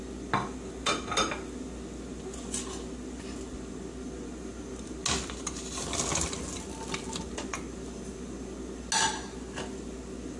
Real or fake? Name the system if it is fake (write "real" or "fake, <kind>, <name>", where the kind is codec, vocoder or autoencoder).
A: real